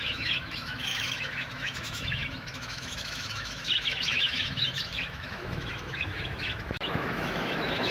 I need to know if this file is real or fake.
fake